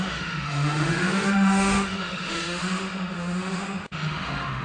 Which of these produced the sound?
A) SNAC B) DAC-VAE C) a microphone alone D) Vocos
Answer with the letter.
B